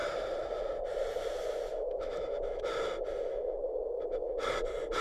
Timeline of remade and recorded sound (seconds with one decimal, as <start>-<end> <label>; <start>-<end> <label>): 0.0-1.7 recorded; 1.7-2.6 remade; 2.6-3.3 recorded; 3.3-4.3 remade; 4.3-5.0 recorded